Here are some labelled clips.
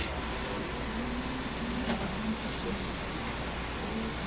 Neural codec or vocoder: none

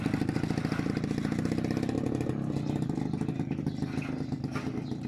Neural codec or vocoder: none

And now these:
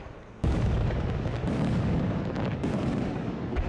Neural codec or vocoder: codec, DAC